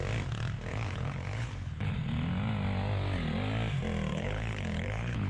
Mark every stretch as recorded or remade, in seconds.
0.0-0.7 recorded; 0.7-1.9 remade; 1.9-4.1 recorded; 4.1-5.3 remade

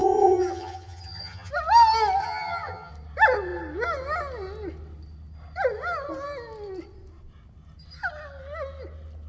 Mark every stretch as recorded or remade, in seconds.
0.0-1.5 remade; 1.5-2.2 recorded; 2.2-2.9 remade; 2.9-9.3 recorded

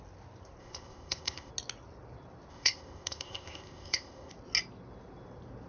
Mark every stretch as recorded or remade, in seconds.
0.0-0.6 recorded; 0.6-1.5 remade; 1.5-2.5 recorded; 2.5-4.3 remade; 4.3-5.7 recorded

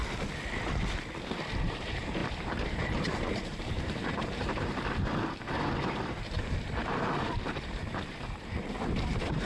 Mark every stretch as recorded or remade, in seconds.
0.0-1.6 recorded; 1.6-9.5 remade

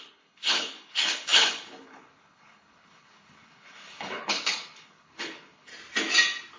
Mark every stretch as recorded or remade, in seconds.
0.0-5.7 remade; 5.7-6.6 recorded

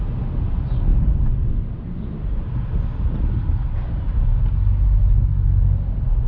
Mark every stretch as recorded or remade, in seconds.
0.0-6.3 recorded

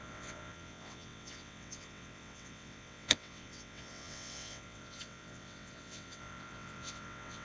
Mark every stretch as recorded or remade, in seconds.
0.0-7.4 remade

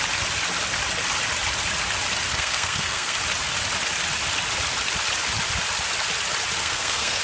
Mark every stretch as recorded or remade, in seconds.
0.0-2.3 recorded; 2.3-3.2 remade; 3.2-6.6 recorded; 6.6-7.2 remade